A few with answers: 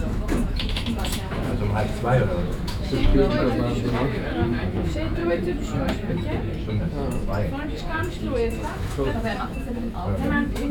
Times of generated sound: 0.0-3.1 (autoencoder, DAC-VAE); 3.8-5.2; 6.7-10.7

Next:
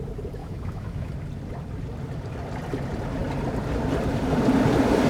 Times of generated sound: 0.4-1.1 (autoencoder, DAC-VAE)

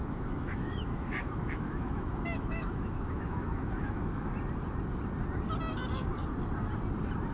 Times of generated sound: 0.0-4.3 (autoencoder, DAC-VAE)

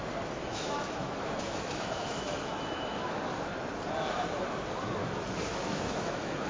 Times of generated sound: 0.4-3.2 (autoencoder, DAC-VAE); 5.0-6.5

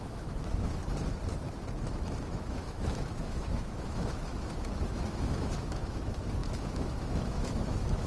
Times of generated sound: 0.0-0.8 (autoencoder, DAC-VAE); 2.2-8.1

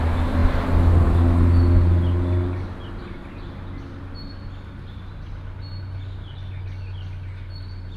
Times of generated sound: none

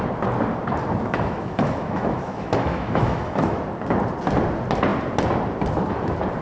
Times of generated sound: 1.0-3.6 (autoencoder, DAC-VAE)